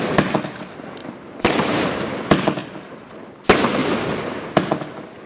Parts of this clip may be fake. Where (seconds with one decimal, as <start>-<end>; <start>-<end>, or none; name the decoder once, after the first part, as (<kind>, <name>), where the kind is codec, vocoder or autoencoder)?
1.0-1.9 (vocoder, BigVGAN v2); 2.6-3.1